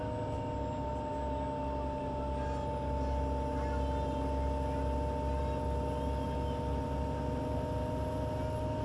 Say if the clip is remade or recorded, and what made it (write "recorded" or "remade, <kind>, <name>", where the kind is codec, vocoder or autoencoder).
recorded